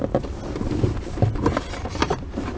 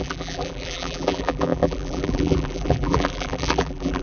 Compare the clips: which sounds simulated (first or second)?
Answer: second